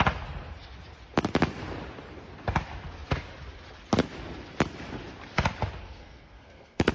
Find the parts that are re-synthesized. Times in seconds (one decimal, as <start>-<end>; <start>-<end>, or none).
5.8-6.9